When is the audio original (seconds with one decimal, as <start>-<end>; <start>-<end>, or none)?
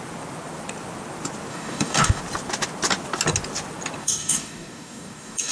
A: 0.0-1.5; 2.2-4.0